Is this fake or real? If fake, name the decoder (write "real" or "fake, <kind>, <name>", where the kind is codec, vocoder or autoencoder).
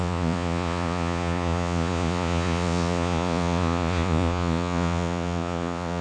fake, vocoder, Vocos